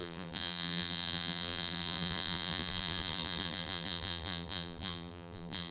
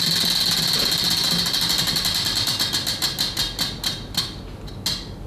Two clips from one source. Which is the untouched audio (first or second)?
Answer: second